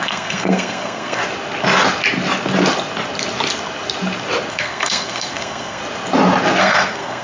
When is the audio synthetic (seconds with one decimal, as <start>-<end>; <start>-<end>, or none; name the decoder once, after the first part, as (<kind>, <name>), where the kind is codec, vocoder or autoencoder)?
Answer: 0.0-1.2 (codec, SNAC); 4.5-5.8; 6.6-7.2